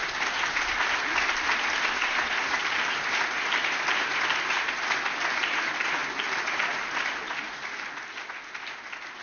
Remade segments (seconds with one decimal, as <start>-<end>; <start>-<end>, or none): none